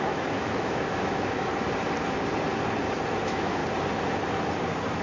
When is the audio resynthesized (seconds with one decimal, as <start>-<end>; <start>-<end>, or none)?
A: 0.0-1.5; 3.2-3.6